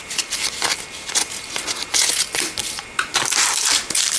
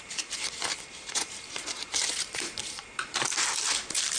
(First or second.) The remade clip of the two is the second